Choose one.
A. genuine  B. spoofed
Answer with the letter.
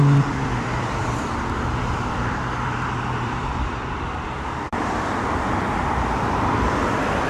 B